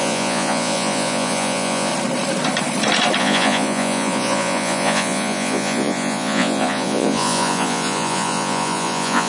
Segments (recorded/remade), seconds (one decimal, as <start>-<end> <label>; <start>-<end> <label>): 0.0-1.9 remade; 1.9-3.2 recorded; 3.2-9.3 remade

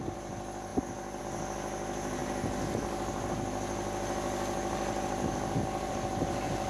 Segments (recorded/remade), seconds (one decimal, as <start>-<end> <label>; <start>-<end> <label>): 0.0-6.7 recorded

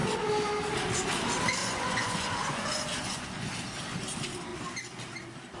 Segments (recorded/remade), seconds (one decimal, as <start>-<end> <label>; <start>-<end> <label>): 0.0-1.6 recorded; 1.6-3.5 remade; 3.5-5.6 recorded